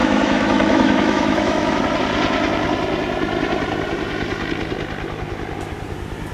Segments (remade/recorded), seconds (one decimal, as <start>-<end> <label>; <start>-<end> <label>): 0.0-1.8 remade; 1.8-6.3 recorded